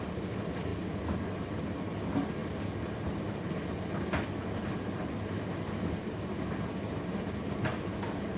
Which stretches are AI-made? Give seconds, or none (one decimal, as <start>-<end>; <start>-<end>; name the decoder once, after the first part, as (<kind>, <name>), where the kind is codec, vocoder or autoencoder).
none